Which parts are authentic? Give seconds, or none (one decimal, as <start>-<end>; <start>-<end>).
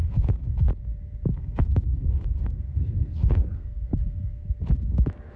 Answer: 0.7-1.3; 4.5-5.4